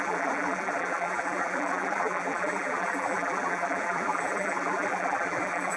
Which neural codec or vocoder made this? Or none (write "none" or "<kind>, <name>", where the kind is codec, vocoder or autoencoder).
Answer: vocoder, BigVGAN v2